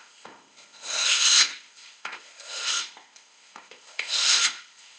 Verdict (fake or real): fake